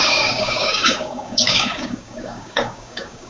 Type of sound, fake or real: fake